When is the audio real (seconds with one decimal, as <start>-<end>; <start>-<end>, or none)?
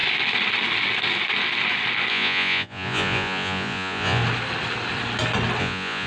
0.0-2.1; 4.2-5.6